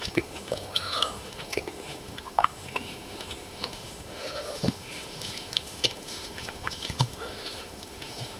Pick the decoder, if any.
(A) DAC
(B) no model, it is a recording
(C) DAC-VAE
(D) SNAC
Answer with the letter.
C